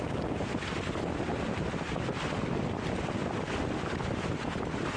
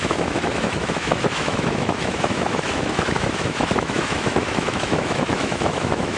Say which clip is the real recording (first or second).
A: first